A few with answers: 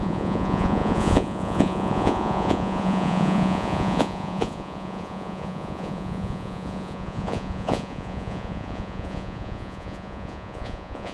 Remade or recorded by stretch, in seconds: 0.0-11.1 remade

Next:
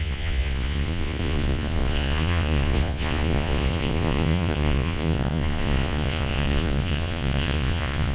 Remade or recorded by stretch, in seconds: 0.0-8.1 remade

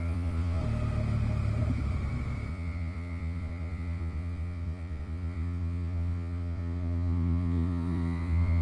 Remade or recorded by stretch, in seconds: 0.0-0.6 remade; 0.6-2.5 recorded; 2.5-8.6 remade